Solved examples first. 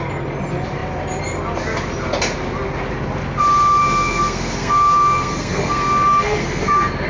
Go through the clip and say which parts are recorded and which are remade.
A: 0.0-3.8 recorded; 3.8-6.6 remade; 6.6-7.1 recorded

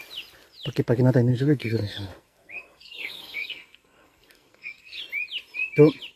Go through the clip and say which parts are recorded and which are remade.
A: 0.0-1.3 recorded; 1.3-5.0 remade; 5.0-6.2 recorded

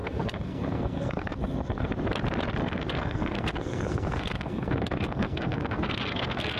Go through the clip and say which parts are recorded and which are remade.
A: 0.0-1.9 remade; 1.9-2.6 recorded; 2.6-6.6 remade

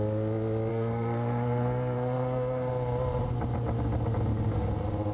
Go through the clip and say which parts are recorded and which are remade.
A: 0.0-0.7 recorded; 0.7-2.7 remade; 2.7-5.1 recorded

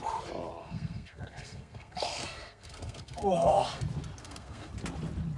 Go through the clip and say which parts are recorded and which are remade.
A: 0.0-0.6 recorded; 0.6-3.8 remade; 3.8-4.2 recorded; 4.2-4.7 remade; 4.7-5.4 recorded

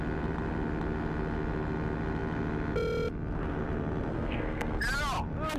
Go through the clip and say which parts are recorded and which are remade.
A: 0.0-4.1 recorded; 4.1-4.8 remade; 4.8-5.6 recorded

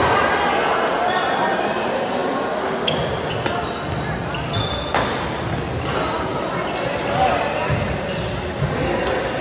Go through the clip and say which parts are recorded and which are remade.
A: 0.0-9.4 recorded